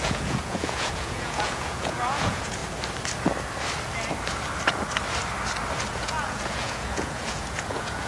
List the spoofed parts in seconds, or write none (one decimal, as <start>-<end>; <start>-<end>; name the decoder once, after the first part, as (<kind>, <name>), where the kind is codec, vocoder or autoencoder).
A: 0.0-2.6 (vocoder, Vocos); 5.9-8.1